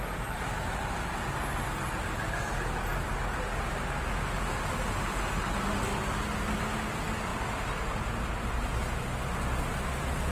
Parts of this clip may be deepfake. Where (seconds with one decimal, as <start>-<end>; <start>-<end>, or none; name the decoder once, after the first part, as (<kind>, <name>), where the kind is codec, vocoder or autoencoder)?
none